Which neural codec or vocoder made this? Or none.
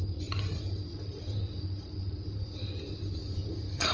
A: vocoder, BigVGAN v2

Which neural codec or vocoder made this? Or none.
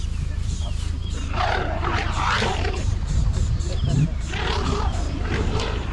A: vocoder, BigVGAN v2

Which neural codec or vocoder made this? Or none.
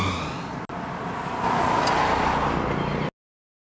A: none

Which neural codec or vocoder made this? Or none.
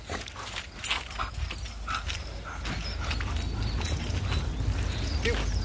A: none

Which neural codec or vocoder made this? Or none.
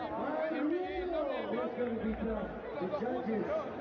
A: none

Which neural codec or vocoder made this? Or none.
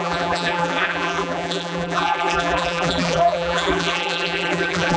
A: vocoder, BigVGAN v2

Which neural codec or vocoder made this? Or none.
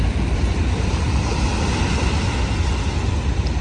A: none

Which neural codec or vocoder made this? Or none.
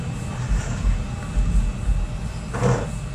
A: none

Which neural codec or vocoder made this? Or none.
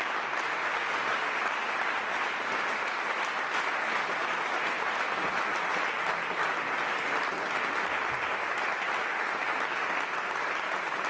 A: none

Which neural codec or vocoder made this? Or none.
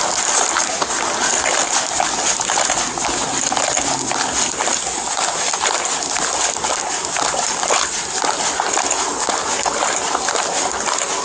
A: none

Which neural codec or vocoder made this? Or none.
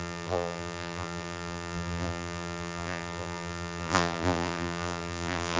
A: vocoder, BigVGAN v2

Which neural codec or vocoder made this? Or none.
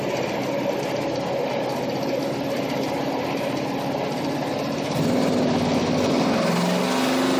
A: none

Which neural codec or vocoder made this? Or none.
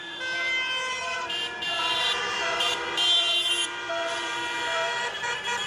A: vocoder, BigVGAN v2